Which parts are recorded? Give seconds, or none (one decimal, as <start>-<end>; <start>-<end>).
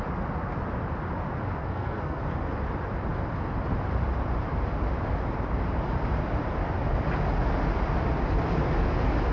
0.0-1.6; 2.2-9.3